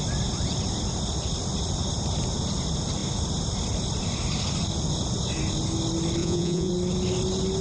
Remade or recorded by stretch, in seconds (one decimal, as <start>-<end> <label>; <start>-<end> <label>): 0.0-6.2 recorded; 6.2-6.7 remade; 6.7-7.6 recorded